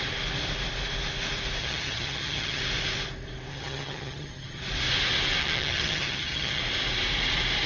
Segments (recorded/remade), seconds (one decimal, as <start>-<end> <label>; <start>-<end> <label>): 0.0-1.6 recorded; 1.6-2.6 remade; 2.6-3.5 recorded; 3.5-4.6 remade; 4.6-5.4 recorded; 5.4-6.6 remade; 6.6-7.7 recorded